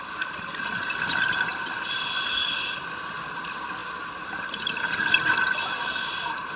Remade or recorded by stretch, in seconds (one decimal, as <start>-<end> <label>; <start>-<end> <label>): 0.0-6.6 recorded